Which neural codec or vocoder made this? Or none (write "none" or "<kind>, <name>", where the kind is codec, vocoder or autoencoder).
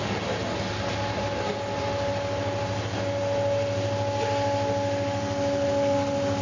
none